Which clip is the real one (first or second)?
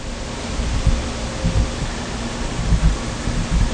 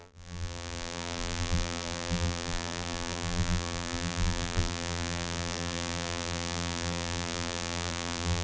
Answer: first